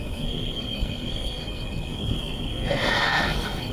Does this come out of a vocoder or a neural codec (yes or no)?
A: yes